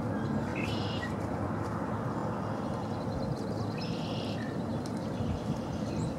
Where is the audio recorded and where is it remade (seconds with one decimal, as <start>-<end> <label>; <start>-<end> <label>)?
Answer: 0.0-0.5 recorded; 0.5-1.2 remade; 1.2-6.2 recorded